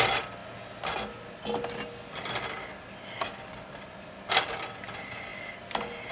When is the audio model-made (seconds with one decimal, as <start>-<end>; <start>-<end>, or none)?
none